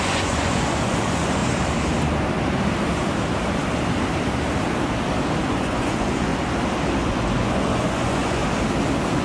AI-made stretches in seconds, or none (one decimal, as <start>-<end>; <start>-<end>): 0.0-1.4; 5.5-6.3; 7.0-8.4